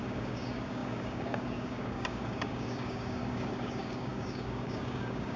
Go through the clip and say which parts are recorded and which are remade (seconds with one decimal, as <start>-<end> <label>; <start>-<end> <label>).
0.0-5.4 remade